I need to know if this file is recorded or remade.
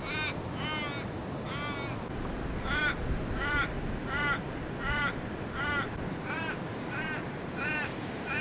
recorded